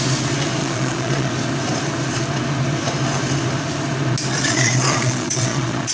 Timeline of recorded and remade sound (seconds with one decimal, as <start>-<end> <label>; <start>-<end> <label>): 0.0-0.6 recorded; 0.6-1.3 remade; 1.3-4.3 recorded; 4.3-5.9 remade